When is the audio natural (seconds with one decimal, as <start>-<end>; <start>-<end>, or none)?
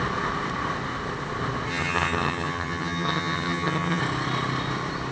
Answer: 0.0-1.7; 4.0-5.1